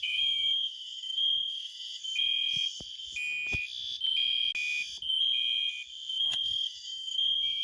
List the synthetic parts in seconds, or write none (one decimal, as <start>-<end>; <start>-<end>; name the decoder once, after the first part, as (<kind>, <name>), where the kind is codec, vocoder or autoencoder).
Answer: 0.0-2.0 (autoencoder, DAC-VAE); 6.2-7.6